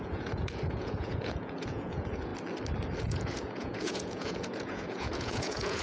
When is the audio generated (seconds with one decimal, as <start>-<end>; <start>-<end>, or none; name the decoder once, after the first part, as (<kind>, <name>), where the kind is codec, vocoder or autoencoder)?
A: 0.0-2.3 (vocoder, Vocos); 3.0-5.8